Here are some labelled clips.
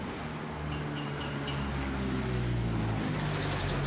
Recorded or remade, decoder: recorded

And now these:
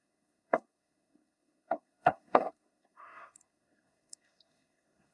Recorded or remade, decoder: remade, codec, SNAC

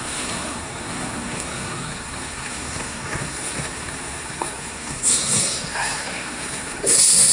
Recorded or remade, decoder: remade, codec, SNAC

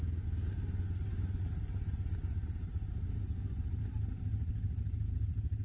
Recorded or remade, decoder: recorded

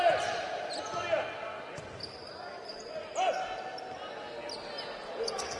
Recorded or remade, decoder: recorded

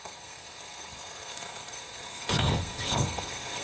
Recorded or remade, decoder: remade, codec, SNAC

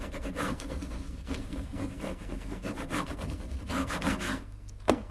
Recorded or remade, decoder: remade, codec, SNAC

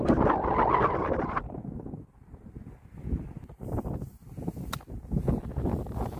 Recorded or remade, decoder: recorded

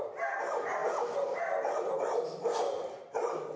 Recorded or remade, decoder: recorded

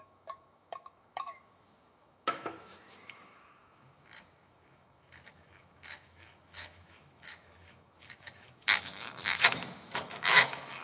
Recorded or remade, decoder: remade, autoencoder, DAC-VAE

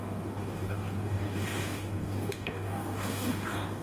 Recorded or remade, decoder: remade, codec, DAC